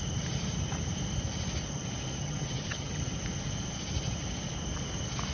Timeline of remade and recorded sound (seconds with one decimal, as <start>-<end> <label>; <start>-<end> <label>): 0.0-2.2 recorded; 2.2-3.0 remade; 3.0-5.3 recorded